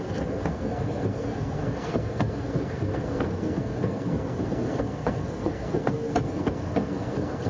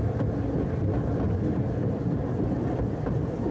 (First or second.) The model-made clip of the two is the first